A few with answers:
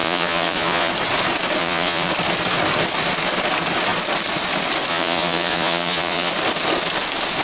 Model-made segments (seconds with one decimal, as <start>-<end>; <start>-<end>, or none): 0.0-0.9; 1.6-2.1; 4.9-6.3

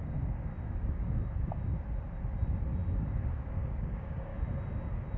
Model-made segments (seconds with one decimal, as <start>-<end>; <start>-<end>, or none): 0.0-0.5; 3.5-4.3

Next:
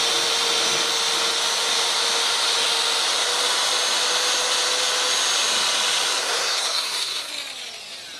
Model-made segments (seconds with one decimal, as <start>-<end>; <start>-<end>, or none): 6.2-7.3

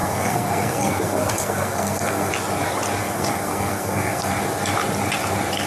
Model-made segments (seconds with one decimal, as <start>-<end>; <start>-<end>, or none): 0.0-2.3; 3.0-4.3

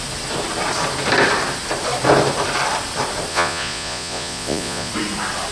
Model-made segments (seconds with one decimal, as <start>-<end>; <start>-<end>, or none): 3.3-4.9

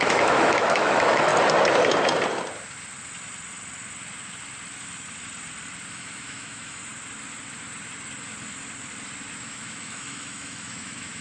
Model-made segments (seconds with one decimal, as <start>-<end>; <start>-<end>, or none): 0.0-1.3; 5.9-6.8; 9.4-11.2

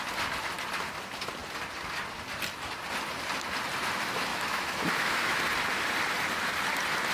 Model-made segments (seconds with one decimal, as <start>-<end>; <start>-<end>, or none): 4.3-5.4